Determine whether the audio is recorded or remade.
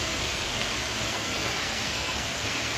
remade